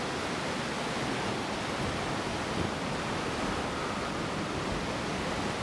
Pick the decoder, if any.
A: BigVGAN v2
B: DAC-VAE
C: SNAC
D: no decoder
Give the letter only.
D